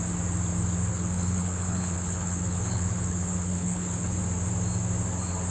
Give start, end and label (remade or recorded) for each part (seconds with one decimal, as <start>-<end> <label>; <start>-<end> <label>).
0.0-0.9 recorded; 0.9-4.2 remade; 4.2-5.5 recorded